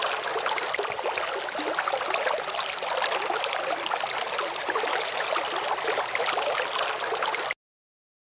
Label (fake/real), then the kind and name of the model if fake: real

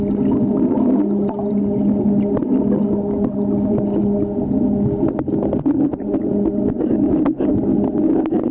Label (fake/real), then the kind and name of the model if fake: real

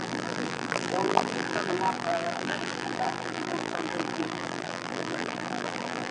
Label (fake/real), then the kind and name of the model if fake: fake, vocoder, BigVGAN v2